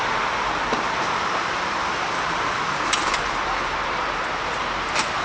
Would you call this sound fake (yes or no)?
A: yes